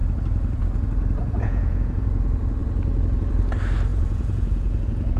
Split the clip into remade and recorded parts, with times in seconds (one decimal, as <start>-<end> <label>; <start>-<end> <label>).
0.0-1.2 recorded; 1.2-2.1 remade; 2.1-3.9 recorded; 3.9-5.2 remade